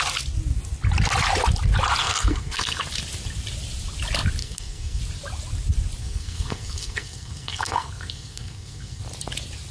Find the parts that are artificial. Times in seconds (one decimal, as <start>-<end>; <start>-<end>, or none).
2.0-2.8; 4.4-5.0; 6.0-9.0